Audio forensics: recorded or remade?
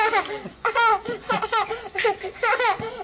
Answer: remade